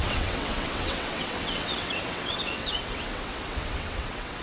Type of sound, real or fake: fake